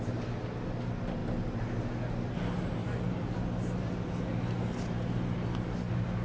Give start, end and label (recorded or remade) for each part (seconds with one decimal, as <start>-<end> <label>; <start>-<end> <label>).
0.0-6.2 recorded